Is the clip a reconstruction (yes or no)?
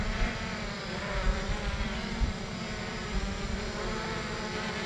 yes